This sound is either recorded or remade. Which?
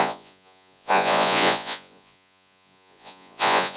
remade